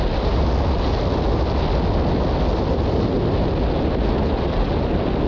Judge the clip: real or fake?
real